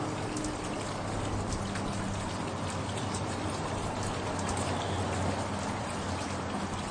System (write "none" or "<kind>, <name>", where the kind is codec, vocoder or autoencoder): none